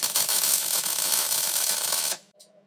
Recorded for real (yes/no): no